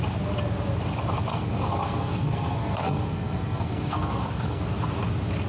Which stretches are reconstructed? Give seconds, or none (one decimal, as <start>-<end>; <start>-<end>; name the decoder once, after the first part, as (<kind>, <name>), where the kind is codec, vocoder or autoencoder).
1.3-4.6 (codec, SNAC)